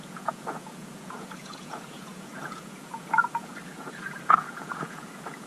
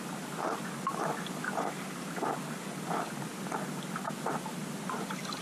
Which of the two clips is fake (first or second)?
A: first